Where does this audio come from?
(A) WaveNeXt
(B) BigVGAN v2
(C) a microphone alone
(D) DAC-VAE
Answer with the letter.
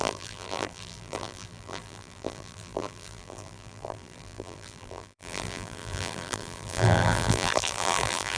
B